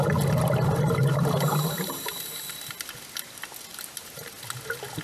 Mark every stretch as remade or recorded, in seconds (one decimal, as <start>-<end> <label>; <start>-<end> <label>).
0.0-1.5 recorded; 1.5-2.2 remade; 2.2-3.7 recorded; 3.7-4.4 remade; 4.4-5.0 recorded